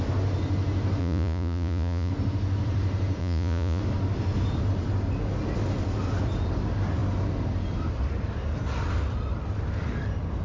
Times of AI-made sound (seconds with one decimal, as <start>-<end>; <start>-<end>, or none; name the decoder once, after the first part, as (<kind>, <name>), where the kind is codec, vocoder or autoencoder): 1.0-2.1 (vocoder, Vocos); 3.2-3.8